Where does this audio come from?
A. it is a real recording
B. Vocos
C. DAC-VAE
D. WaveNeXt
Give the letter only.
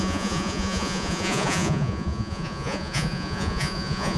B